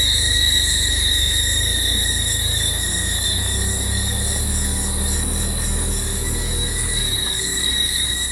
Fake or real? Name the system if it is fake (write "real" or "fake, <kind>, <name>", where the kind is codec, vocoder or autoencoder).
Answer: fake, codec, DAC